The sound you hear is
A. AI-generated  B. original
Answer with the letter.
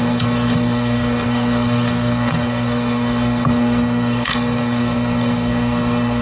A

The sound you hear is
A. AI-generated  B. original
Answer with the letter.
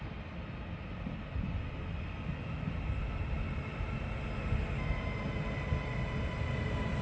B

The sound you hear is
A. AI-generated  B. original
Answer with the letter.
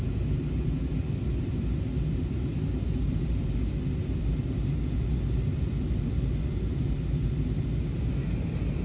B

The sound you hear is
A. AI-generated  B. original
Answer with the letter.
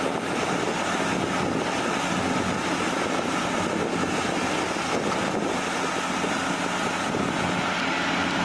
B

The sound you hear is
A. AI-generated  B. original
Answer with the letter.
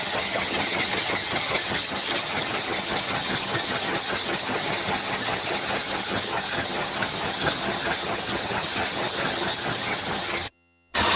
A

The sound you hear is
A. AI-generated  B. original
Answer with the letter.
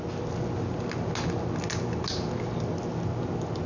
B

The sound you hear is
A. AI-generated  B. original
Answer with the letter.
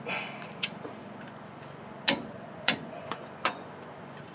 A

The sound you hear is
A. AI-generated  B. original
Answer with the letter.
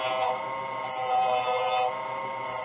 B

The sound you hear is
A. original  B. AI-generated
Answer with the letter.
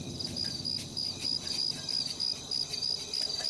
A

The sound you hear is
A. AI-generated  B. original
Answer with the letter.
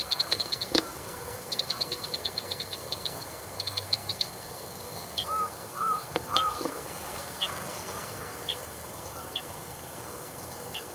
A